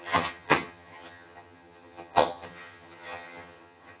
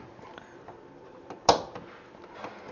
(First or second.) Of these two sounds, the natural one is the second